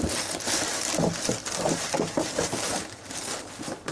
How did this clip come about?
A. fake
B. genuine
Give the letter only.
B